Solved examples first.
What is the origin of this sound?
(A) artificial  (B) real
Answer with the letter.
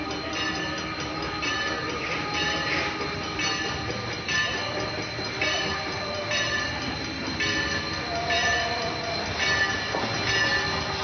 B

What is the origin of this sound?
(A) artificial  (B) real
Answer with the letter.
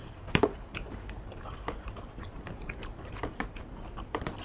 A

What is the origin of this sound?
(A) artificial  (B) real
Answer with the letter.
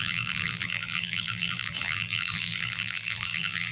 A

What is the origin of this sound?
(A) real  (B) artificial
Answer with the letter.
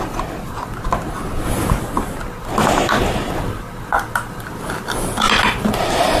A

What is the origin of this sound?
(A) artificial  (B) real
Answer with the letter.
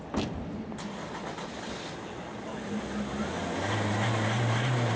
B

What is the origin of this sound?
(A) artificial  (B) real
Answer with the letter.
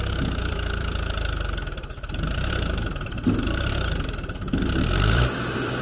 A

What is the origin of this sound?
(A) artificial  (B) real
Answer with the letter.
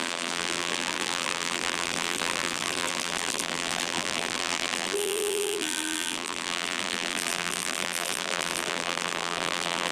A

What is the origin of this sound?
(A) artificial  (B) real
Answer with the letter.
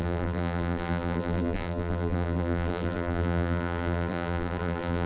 A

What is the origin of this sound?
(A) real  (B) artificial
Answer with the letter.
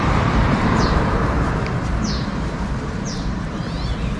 B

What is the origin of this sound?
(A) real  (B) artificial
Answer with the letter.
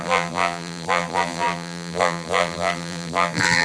B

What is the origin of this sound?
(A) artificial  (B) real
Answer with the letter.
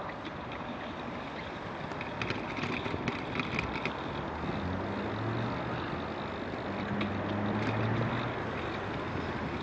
B